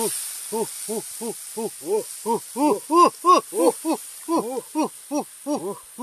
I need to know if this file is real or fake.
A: real